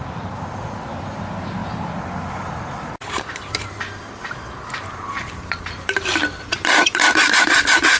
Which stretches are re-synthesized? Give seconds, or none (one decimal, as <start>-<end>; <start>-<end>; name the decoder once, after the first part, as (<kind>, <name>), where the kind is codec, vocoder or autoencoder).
0.0-8.0 (vocoder, BigVGAN v2)